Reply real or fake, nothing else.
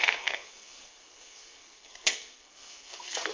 fake